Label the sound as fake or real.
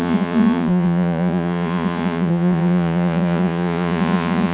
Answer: fake